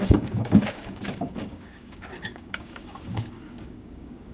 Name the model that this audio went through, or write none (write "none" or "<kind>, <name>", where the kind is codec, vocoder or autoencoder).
codec, DAC